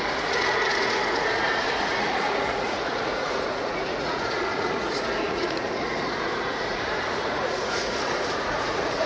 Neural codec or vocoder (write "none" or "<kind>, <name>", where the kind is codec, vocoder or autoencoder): vocoder, Vocos